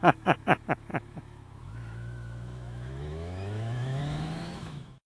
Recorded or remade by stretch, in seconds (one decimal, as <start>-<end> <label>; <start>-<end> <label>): 0.0-5.1 remade